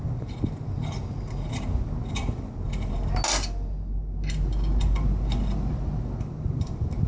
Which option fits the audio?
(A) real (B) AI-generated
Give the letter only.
A